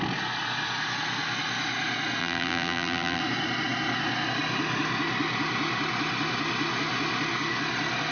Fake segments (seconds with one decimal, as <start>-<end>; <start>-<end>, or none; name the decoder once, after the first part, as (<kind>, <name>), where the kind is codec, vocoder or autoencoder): 2.2-3.2 (vocoder, BigVGAN v2)